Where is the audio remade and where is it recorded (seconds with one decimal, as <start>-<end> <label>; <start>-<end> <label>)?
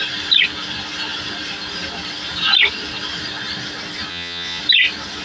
0.0-4.1 recorded; 4.1-4.6 remade; 4.6-5.2 recorded